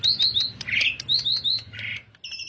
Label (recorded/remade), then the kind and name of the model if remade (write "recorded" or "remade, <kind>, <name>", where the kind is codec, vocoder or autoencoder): recorded